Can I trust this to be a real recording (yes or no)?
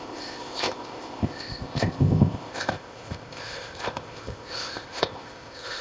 no